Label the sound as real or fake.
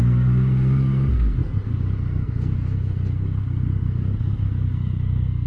fake